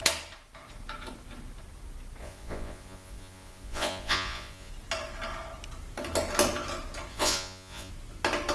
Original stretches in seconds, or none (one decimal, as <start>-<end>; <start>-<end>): 0.0-2.2; 4.7-7.1; 7.9-8.5